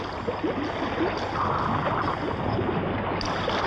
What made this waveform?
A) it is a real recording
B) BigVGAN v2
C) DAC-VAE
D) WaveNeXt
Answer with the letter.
A